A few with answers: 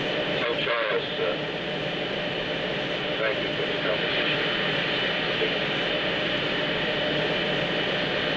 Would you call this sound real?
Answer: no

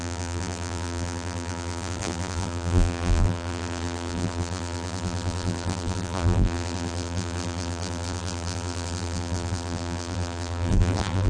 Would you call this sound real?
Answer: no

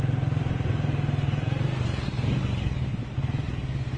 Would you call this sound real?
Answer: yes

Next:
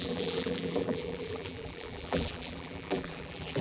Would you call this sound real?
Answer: no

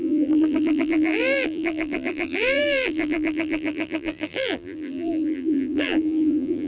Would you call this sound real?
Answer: no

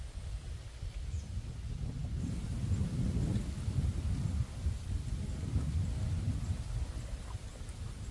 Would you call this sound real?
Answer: yes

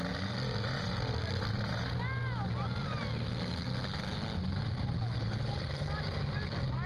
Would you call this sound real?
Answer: yes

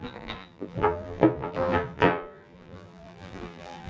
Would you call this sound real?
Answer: no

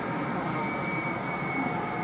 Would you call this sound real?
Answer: no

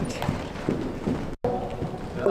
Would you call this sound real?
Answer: yes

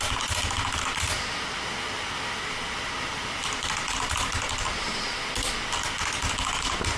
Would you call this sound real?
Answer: yes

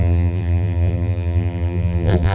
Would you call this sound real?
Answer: no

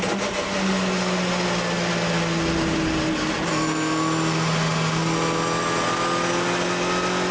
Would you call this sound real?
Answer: yes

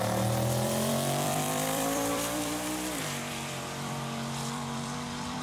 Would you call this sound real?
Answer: no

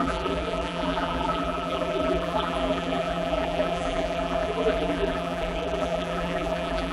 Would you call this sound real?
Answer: no